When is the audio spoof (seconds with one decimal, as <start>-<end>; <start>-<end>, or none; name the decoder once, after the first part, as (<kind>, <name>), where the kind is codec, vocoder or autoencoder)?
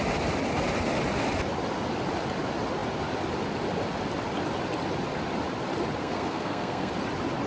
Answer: 6.0-6.9 (codec, SNAC)